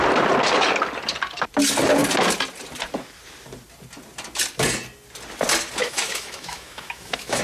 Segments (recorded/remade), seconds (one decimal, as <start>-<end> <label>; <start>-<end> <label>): 0.0-5.8 recorded; 5.8-7.4 remade